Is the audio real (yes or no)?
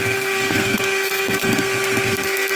no